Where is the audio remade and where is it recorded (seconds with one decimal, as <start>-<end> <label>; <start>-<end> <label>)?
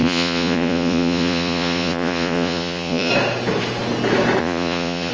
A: 0.0-3.1 remade; 3.1-4.4 recorded; 4.4-5.1 remade